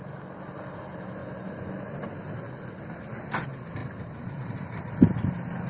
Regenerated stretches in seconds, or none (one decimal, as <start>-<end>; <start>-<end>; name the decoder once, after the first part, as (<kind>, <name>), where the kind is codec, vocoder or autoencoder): none